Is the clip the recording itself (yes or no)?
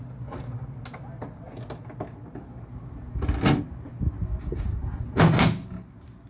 yes